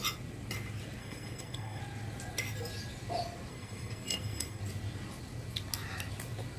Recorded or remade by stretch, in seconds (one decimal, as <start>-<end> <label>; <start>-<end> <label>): 0.0-1.0 recorded; 1.0-1.8 remade; 1.8-3.5 recorded; 3.5-4.6 remade; 4.6-6.6 recorded